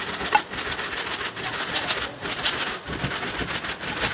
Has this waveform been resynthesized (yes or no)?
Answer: no